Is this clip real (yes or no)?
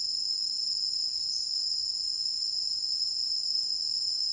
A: yes